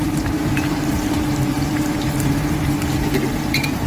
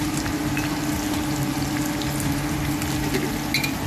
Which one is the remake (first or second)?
first